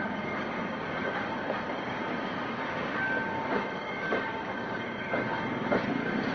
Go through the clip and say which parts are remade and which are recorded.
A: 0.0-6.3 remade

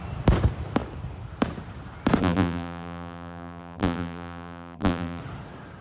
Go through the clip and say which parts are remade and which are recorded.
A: 0.0-2.2 recorded; 2.2-5.2 remade; 5.2-5.8 recorded

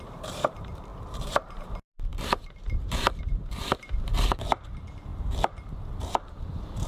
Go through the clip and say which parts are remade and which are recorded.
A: 0.0-5.1 remade; 5.1-6.0 recorded; 6.0-6.9 remade

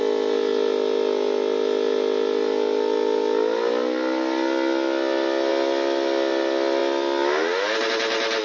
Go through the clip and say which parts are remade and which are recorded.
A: 0.0-8.4 recorded

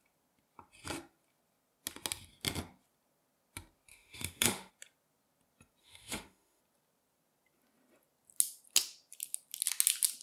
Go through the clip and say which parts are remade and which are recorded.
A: 0.0-3.9 recorded; 3.9-4.7 remade; 4.7-5.8 recorded; 5.8-6.6 remade; 6.6-10.2 recorded

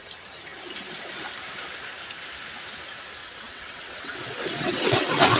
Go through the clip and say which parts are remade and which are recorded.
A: 0.0-3.2 recorded; 3.2-5.4 remade

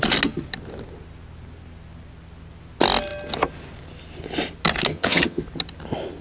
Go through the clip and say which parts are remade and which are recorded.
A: 0.0-4.9 recorded; 4.9-5.4 remade; 5.4-6.2 recorded